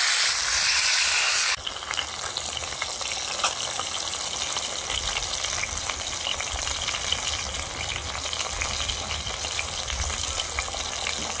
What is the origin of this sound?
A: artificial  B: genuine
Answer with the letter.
B